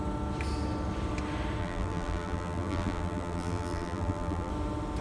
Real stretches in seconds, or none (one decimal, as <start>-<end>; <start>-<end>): 0.0-1.6; 4.5-5.0